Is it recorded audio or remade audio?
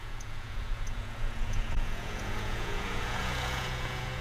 remade